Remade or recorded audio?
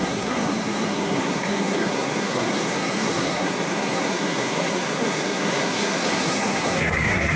remade